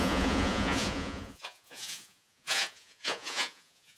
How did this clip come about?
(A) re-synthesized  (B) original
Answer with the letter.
A